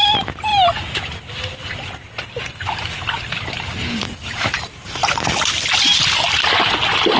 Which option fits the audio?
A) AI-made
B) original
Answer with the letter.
B